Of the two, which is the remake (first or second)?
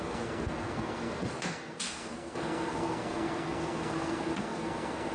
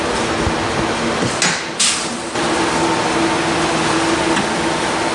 first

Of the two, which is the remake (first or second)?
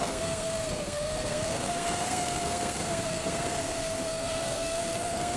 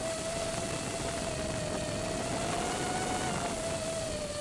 first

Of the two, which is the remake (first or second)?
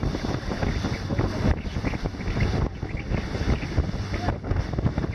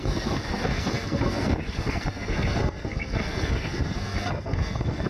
second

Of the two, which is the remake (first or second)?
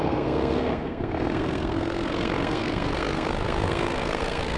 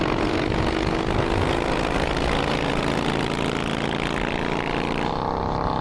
first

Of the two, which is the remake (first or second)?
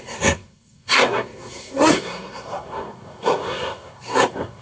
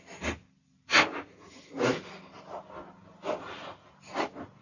first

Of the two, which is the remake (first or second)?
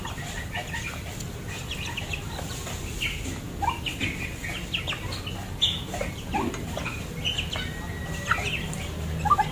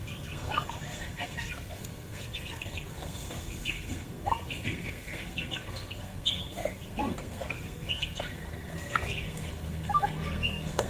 second